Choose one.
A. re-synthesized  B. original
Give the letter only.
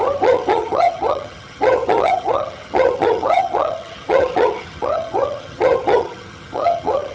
A